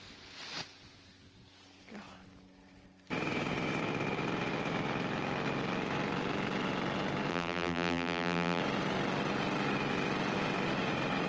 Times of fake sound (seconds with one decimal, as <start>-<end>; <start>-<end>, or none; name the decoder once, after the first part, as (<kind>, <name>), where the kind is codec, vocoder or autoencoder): 7.3-8.6 (vocoder, BigVGAN v2)